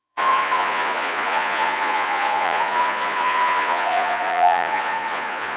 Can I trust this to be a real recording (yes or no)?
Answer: no